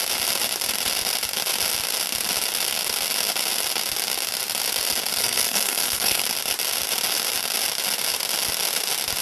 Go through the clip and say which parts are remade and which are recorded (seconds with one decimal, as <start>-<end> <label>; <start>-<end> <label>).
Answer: 0.0-5.2 recorded; 5.2-6.2 remade; 6.2-9.2 recorded